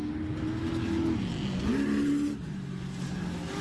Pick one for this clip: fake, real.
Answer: real